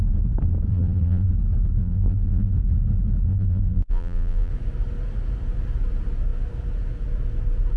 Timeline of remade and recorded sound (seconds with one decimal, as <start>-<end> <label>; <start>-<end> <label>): 0.0-0.7 recorded; 0.7-1.3 remade; 1.3-1.8 recorded; 1.8-2.5 remade; 2.5-3.3 recorded; 3.3-4.5 remade; 4.5-7.8 recorded